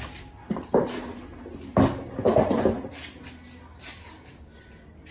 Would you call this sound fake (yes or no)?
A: no